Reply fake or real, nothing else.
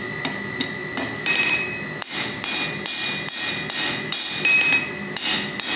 real